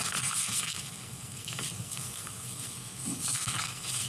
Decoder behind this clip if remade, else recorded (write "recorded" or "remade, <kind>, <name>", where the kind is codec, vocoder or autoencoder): remade, codec, SNAC